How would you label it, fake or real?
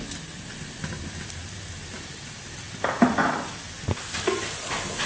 real